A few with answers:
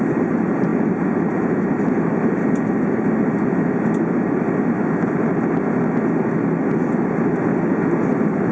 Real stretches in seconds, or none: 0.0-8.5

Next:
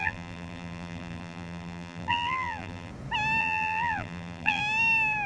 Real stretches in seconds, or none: 2.9-3.4; 4.6-5.3

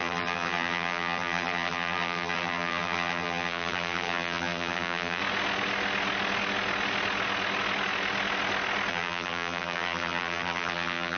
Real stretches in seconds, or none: 5.2-8.9

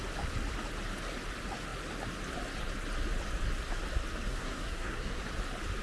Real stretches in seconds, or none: 0.0-4.3; 5.2-5.8

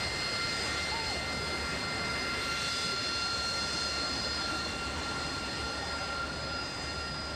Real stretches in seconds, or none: 0.0-7.4

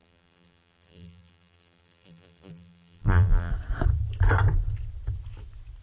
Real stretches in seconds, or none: 3.5-5.8